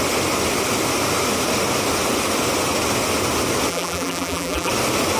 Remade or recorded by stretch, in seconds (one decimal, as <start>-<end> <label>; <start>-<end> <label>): 0.0-3.7 recorded; 3.7-4.7 remade; 4.7-5.2 recorded